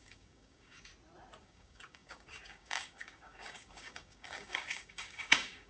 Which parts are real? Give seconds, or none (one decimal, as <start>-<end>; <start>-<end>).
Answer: 0.9-1.4